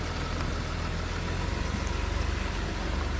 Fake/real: real